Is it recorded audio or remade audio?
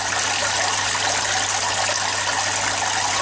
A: recorded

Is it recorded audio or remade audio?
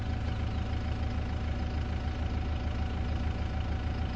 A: recorded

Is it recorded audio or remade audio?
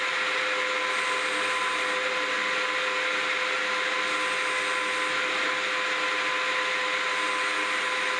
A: recorded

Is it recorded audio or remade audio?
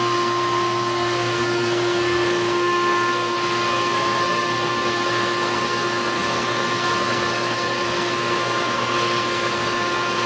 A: remade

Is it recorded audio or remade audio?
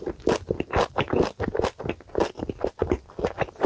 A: recorded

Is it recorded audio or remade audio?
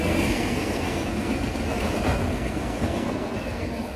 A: remade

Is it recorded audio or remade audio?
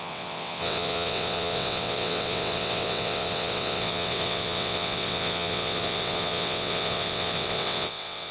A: remade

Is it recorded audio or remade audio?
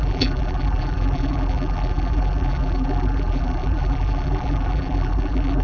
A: remade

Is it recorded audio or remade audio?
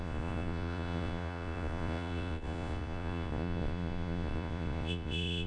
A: remade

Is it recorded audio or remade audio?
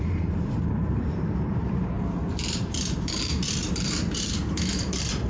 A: remade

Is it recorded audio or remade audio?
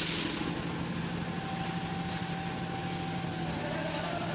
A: recorded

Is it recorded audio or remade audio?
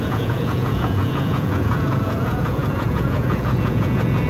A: remade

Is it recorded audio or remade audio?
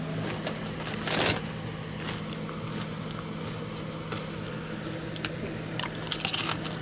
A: recorded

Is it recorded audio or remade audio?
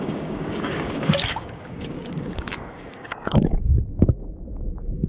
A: remade